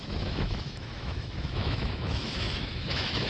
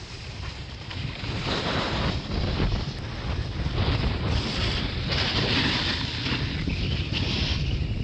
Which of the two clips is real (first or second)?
second